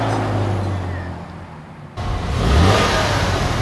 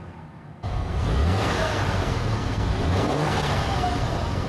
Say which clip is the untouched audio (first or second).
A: first